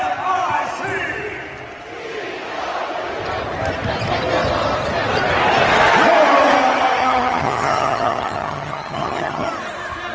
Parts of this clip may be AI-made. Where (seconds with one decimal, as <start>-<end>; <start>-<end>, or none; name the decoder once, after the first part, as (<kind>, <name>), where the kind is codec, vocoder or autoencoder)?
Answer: 7.0-9.5 (vocoder, HiFi-GAN)